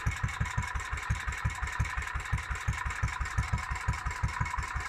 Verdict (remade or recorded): recorded